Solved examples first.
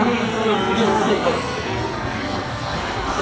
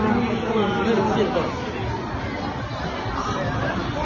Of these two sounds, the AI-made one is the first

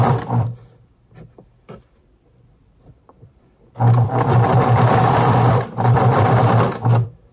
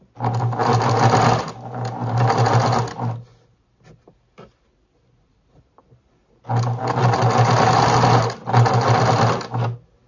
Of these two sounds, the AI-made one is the first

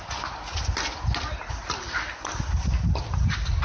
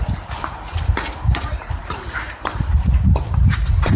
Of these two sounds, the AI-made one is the second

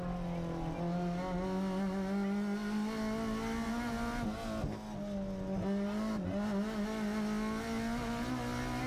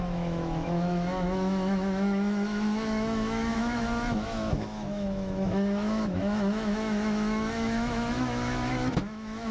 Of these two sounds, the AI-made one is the second